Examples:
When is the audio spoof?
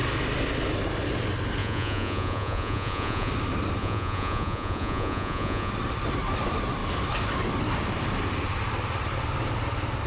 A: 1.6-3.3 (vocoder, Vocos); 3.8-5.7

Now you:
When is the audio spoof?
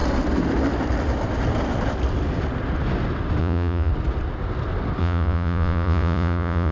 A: 3.4-3.9 (vocoder, Vocos); 5.0-6.7